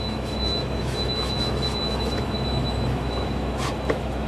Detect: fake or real fake